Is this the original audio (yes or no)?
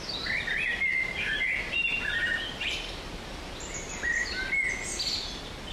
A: yes